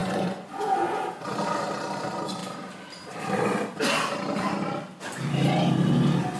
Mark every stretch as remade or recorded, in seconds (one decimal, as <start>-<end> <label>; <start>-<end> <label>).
0.0-1.0 remade; 1.0-6.4 recorded